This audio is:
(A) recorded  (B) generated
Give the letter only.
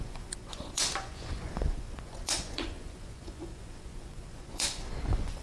B